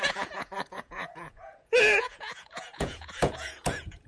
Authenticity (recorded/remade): remade